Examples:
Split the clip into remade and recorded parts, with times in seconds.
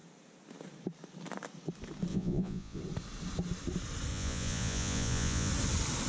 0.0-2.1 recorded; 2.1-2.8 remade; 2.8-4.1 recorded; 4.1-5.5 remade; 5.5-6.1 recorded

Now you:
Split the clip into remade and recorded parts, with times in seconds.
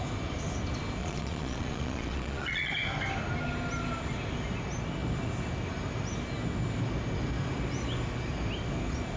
0.0-1.0 recorded; 1.0-2.7 remade; 2.7-9.2 recorded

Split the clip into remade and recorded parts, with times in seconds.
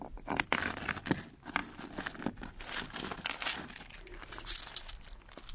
0.0-5.5 recorded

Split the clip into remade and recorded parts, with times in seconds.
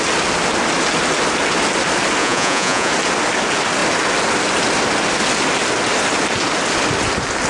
0.0-2.2 recorded; 2.2-2.9 remade; 2.9-7.5 recorded